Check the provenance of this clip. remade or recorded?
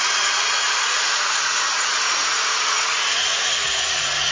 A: remade